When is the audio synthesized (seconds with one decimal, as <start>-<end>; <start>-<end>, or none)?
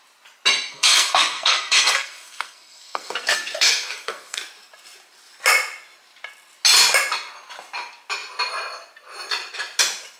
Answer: 0.7-4.4